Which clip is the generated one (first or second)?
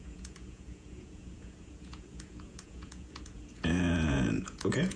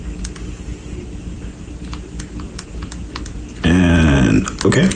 first